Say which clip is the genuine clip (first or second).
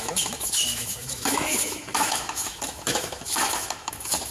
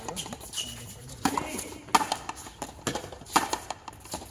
second